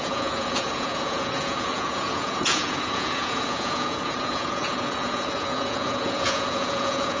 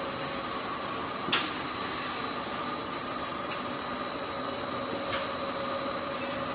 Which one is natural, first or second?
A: second